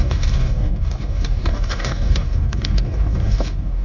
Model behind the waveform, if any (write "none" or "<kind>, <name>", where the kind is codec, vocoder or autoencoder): codec, DAC